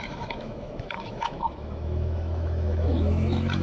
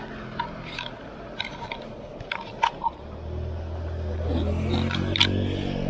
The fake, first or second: first